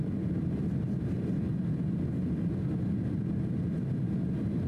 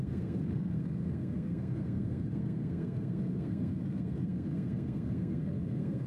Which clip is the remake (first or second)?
second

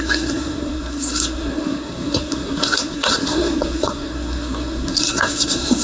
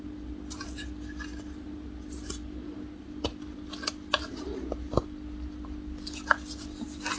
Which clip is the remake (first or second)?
first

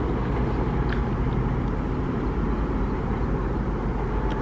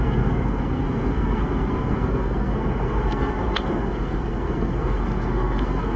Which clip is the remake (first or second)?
second